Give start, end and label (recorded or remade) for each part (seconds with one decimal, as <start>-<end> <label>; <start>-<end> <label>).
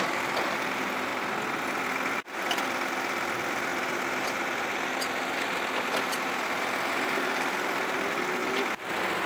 0.0-1.1 remade; 1.1-2.1 recorded; 2.1-3.7 remade; 3.7-7.2 recorded; 7.2-9.3 remade